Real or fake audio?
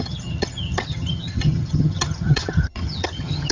fake